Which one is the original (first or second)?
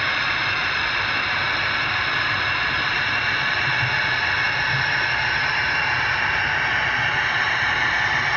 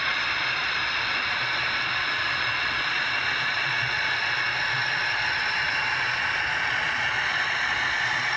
first